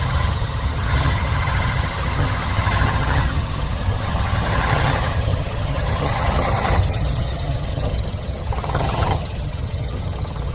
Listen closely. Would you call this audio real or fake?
fake